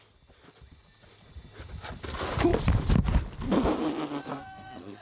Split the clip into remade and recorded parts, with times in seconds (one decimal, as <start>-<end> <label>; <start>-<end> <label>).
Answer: 0.0-4.3 recorded; 4.3-5.0 remade